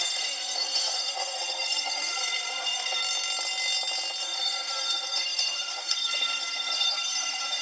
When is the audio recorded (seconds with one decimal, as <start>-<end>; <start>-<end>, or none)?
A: 3.0-4.2